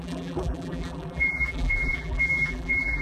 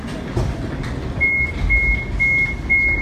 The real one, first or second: second